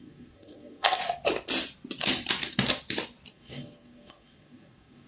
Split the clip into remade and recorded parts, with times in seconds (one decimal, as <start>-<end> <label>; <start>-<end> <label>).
0.0-1.0 remade; 1.0-3.3 recorded; 3.3-5.1 remade